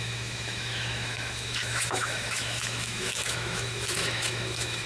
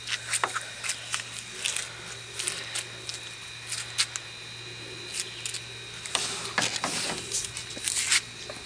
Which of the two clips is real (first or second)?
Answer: second